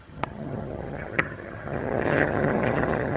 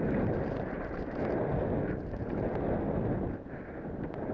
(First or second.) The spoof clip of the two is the first